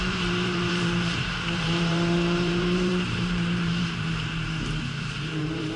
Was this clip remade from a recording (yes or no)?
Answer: yes